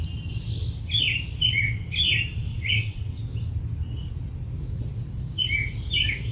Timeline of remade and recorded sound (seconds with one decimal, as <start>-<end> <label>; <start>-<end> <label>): 0.0-2.5 recorded; 2.5-3.2 remade; 3.2-6.3 recorded